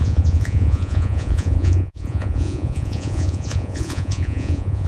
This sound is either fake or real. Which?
fake